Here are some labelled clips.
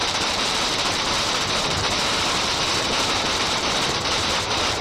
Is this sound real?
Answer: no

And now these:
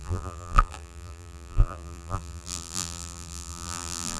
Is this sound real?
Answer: no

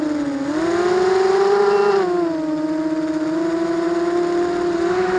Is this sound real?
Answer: no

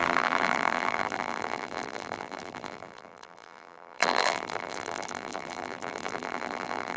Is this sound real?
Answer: no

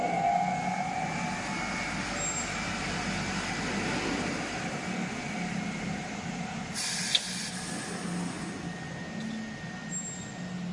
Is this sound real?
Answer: yes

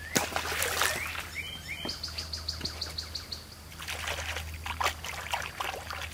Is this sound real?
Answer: yes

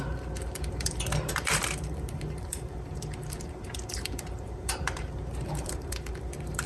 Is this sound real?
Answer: no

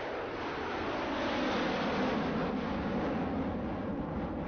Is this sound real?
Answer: yes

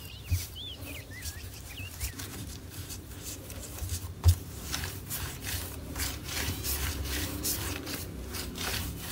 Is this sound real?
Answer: no